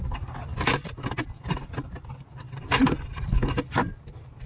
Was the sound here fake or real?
real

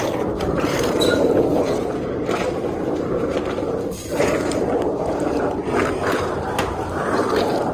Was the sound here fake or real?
fake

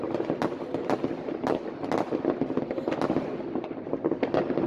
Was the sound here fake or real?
real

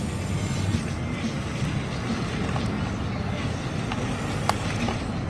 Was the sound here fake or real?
fake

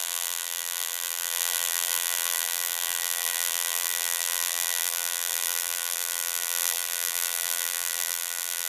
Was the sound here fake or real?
fake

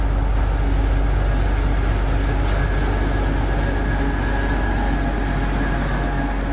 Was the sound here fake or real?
real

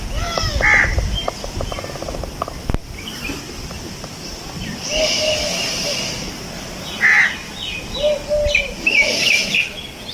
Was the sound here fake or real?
real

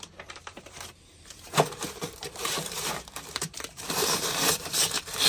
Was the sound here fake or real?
fake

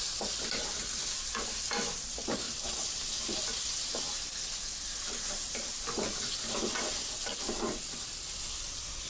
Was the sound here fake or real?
real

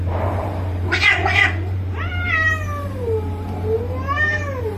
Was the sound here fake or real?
fake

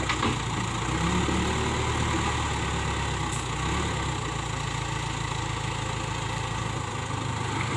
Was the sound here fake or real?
real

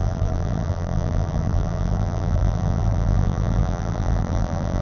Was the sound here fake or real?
fake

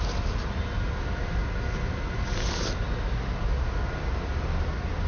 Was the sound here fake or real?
real